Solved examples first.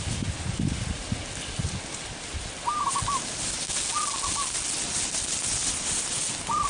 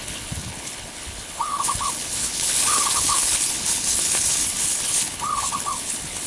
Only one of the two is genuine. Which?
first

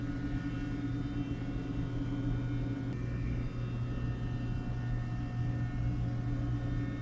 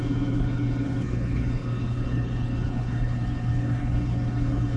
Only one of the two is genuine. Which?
first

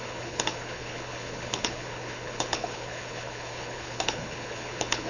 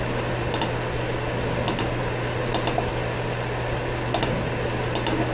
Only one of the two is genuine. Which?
second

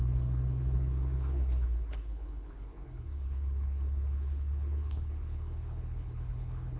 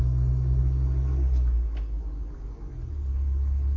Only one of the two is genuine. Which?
second